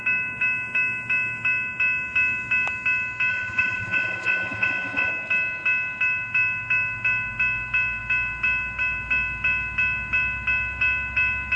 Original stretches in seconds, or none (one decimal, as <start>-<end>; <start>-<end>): 0.0-3.3; 5.1-11.6